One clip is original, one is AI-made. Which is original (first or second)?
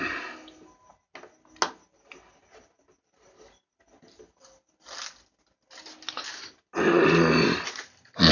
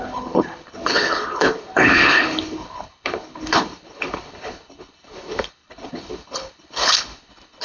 first